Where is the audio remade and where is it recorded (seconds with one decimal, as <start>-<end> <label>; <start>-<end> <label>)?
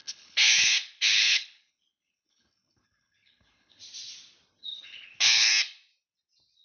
0.0-3.8 remade; 3.8-4.6 recorded; 4.6-5.5 remade; 5.5-6.6 recorded